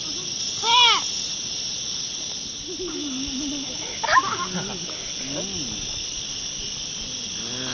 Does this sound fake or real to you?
real